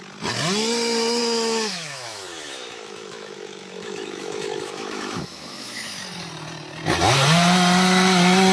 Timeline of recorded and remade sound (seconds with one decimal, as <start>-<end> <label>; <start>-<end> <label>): 0.0-1.2 recorded; 1.2-6.0 remade; 6.0-8.5 recorded

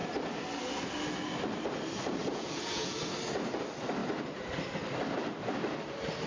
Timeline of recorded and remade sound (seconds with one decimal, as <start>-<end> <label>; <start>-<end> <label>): 0.0-2.2 recorded; 2.2-3.0 remade; 3.0-6.3 recorded

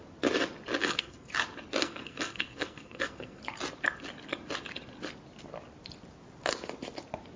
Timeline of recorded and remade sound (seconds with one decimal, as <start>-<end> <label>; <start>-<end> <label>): 0.0-0.8 recorded; 0.8-1.3 remade; 1.3-1.8 recorded; 1.8-3.4 remade; 3.4-7.4 recorded

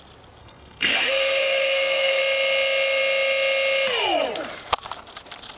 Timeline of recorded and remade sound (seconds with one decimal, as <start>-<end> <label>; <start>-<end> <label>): 0.0-0.4 recorded; 0.4-2.2 remade; 2.2-5.6 recorded

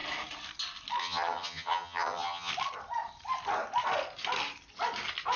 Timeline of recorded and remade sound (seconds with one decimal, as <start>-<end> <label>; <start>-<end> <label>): 0.0-1.0 recorded; 1.0-2.5 remade; 2.5-5.4 recorded

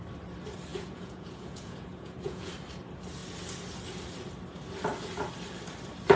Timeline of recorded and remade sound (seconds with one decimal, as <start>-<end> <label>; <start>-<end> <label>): 0.0-0.7 recorded; 0.7-2.5 remade; 2.5-6.2 recorded

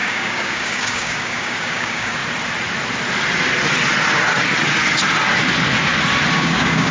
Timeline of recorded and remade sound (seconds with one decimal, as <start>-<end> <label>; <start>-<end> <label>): 0.0-2.2 remade; 2.2-6.3 recorded; 6.3-6.9 remade